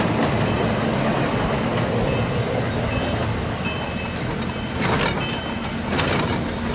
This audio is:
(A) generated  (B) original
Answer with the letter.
B